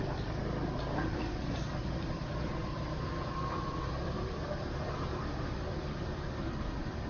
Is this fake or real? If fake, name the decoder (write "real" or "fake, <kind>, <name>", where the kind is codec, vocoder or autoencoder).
fake, vocoder, BigVGAN v2